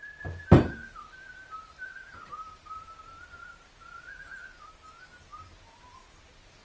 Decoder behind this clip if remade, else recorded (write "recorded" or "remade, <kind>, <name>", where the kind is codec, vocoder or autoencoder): recorded